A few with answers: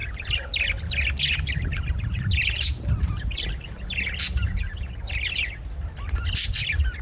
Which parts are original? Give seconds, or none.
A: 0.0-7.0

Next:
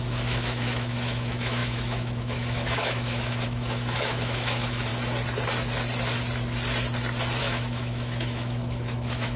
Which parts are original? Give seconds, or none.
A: 4.9-7.4